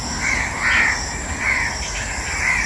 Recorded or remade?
remade